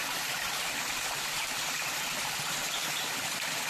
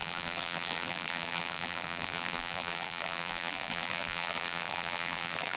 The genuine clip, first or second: first